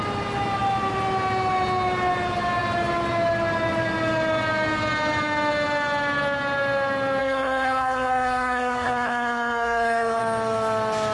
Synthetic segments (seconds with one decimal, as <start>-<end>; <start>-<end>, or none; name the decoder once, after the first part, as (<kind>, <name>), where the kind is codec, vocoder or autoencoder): 7.2-10.2 (codec, SNAC)